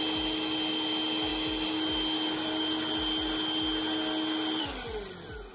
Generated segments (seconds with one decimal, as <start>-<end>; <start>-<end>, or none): none

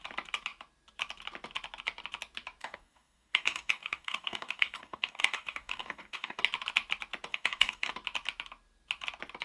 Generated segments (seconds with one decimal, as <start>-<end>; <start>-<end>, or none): 2.6-6.4; 7.3-7.9

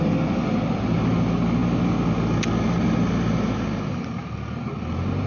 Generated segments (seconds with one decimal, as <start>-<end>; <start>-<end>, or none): none

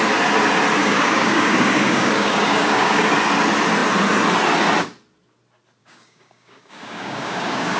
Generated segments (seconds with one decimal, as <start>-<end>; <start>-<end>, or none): 0.8-3.1; 5.8-7.8

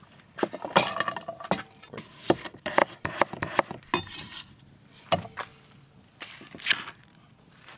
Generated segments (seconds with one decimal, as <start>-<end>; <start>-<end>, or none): none

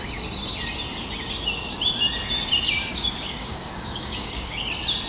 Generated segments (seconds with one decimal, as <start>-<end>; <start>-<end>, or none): 2.9-4.6

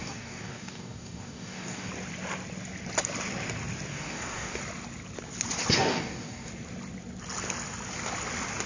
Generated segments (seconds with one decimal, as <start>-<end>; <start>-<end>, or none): 0.0-1.9; 3.9-4.6; 5.9-6.5

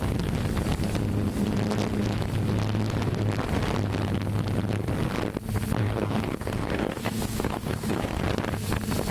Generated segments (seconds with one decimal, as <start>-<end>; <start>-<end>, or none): 5.8-8.2